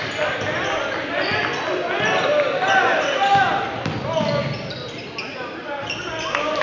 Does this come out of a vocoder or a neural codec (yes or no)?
no